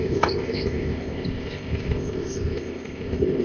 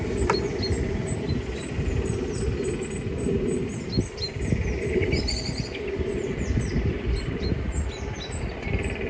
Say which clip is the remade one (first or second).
first